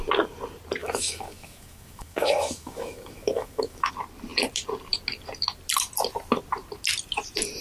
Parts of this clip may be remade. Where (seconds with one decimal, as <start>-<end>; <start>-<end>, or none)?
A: 0.8-3.9